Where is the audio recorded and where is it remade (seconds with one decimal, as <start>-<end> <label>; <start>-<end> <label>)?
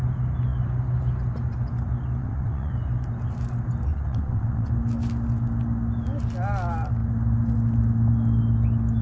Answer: 0.0-2.2 recorded; 2.2-2.7 remade; 2.7-3.9 recorded; 3.9-4.7 remade; 4.7-9.0 recorded